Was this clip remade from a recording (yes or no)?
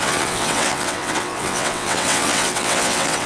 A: yes